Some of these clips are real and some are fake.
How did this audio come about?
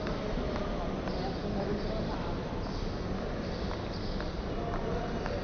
real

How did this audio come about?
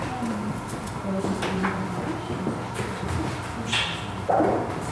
real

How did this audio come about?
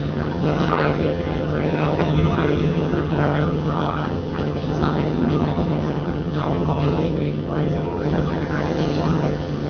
fake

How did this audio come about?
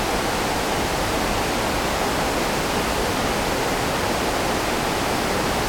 real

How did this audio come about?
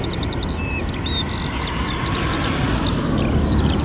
real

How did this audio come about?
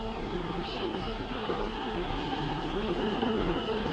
fake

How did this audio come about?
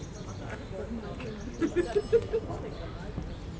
real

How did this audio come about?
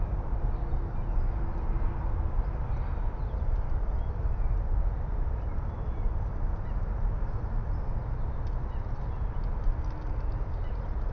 real